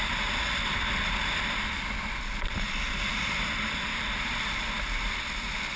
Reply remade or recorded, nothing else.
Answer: recorded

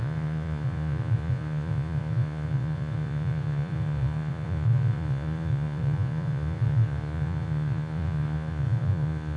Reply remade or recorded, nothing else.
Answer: remade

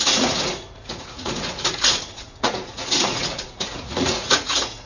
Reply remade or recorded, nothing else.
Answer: remade